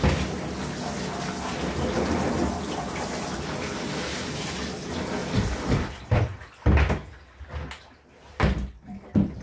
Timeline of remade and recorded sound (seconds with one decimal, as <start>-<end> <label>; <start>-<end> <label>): 0.0-5.2 recorded; 5.2-6.5 remade; 6.5-9.4 recorded